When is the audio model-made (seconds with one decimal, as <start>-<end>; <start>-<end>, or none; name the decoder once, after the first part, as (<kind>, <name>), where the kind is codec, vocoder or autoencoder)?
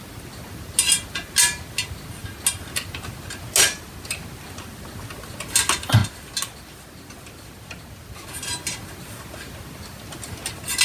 none